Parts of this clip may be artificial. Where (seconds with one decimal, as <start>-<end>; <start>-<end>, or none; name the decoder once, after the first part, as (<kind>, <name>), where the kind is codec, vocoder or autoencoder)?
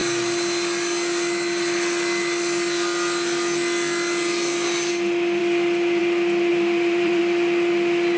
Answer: 6.5-7.2 (vocoder, BigVGAN v2)